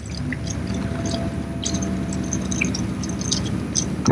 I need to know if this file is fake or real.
real